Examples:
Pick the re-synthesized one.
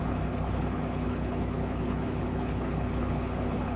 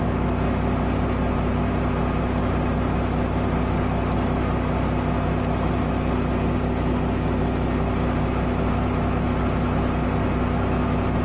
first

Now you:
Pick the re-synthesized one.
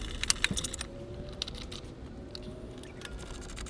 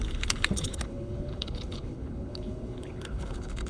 second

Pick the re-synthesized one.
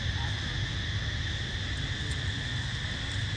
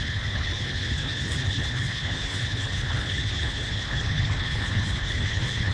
second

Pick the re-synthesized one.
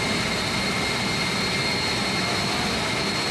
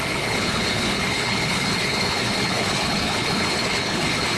second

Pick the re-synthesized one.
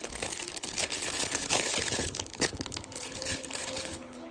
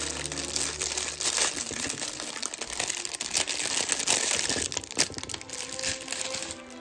first